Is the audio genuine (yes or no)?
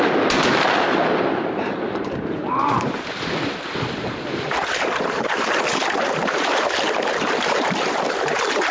no